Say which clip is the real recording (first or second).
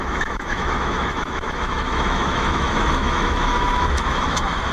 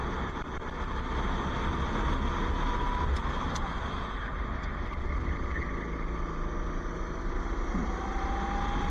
second